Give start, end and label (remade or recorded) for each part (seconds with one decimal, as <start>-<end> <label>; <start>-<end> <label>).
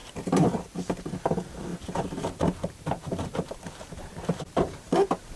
0.0-0.6 remade; 0.6-1.7 recorded; 1.7-4.9 remade; 4.9-5.4 recorded